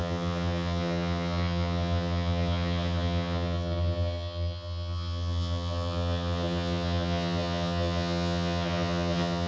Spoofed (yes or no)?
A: yes